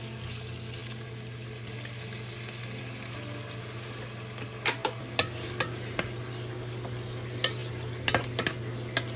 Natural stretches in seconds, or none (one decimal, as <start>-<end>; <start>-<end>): 0.0-9.2